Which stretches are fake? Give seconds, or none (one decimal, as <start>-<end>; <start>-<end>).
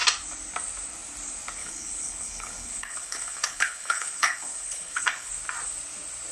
1.6-5.3